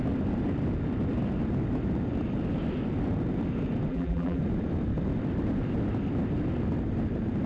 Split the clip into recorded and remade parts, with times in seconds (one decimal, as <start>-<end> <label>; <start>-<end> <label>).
0.0-3.9 recorded; 3.9-4.4 remade; 4.4-7.5 recorded